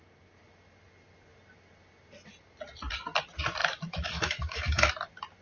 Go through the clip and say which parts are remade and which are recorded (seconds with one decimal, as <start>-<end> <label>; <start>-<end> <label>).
0.0-3.6 recorded; 3.6-4.9 remade; 4.9-5.4 recorded

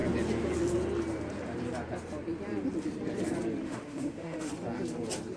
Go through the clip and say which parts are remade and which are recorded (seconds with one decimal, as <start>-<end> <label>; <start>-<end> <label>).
0.0-3.6 recorded; 3.6-4.5 remade; 4.5-5.4 recorded

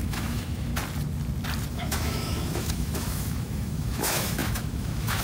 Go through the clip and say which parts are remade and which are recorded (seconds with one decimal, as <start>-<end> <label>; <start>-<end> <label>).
0.0-0.7 remade; 0.7-1.7 recorded; 1.7-5.2 remade